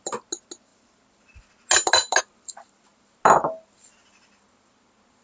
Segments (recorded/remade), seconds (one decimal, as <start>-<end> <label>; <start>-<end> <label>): 0.0-5.2 recorded